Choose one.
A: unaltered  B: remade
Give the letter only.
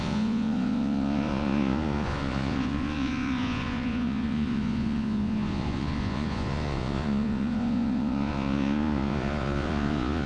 B